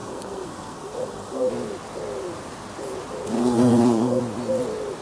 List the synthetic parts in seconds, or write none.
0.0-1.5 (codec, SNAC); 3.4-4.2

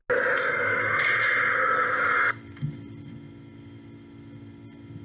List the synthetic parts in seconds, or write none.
none

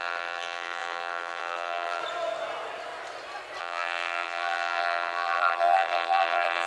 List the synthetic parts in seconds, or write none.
0.0-2.0 (vocoder, BigVGAN v2); 3.6-6.7